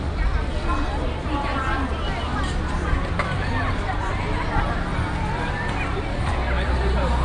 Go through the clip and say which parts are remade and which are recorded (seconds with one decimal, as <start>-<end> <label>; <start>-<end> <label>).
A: 0.0-7.2 recorded